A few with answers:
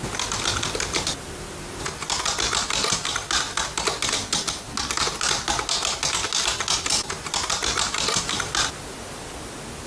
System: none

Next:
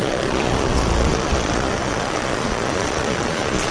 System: vocoder, Vocos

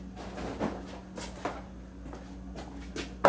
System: none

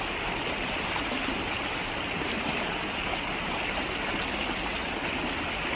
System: none